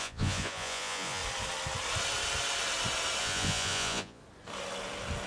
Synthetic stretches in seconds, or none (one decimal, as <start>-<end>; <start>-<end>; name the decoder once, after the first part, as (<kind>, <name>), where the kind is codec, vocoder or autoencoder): 0.0-1.2 (vocoder, Vocos); 3.2-4.2